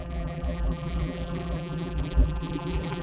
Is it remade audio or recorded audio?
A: remade